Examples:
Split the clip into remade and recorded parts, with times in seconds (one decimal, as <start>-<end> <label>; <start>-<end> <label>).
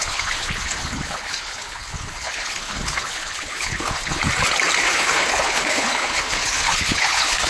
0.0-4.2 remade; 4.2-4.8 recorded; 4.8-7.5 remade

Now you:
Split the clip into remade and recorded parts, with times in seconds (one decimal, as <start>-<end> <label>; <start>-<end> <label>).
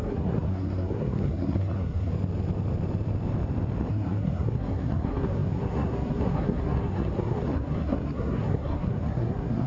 0.0-2.1 remade; 2.1-3.9 recorded; 3.9-9.7 remade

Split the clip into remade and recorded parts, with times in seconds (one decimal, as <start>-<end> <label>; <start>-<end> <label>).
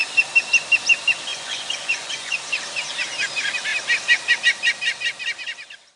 0.0-1.3 recorded; 1.3-2.4 remade; 2.4-6.0 recorded